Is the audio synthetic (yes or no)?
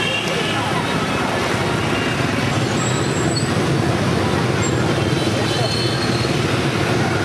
no